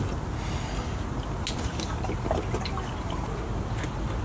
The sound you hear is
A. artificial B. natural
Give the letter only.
B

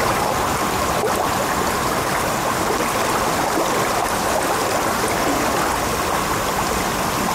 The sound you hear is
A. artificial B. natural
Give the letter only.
B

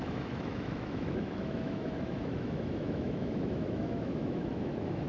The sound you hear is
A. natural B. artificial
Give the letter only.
B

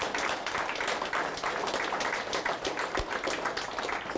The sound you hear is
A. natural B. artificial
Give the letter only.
A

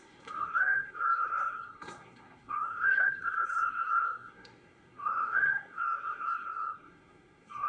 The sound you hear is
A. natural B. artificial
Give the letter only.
B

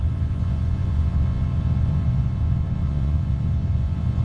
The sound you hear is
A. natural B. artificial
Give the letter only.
B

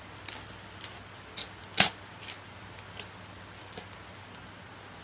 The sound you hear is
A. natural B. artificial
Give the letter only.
A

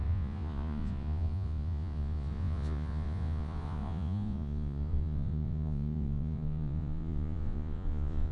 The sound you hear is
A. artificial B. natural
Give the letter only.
A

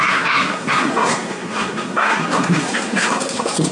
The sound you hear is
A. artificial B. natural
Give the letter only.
A